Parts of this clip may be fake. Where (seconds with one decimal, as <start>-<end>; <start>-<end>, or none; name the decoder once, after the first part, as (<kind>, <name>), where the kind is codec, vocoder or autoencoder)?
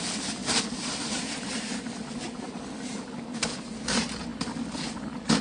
0.4-3.6 (vocoder, BigVGAN v2)